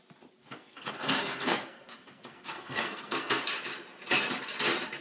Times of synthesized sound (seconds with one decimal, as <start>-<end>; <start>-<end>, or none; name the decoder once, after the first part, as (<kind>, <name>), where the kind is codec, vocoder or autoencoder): 0.4-3.4 (codec, SNAC)